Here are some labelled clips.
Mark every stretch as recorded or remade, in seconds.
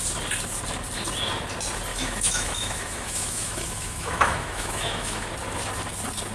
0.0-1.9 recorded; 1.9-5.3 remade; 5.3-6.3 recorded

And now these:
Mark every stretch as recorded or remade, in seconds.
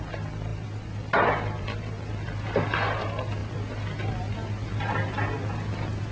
0.0-6.1 recorded